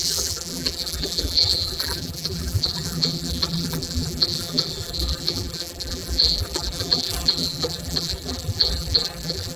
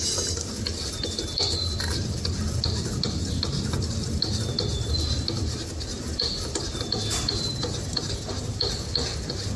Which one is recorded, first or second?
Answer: second